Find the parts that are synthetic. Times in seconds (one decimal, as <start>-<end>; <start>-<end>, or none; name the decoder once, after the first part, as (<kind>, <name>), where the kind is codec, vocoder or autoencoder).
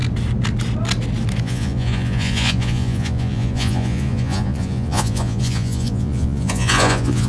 1.4-7.3 (vocoder, Vocos)